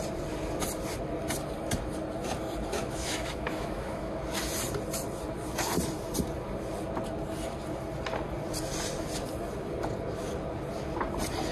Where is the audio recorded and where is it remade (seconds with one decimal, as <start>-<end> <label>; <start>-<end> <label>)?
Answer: 0.0-2.8 recorded; 2.8-4.2 remade; 4.2-11.5 recorded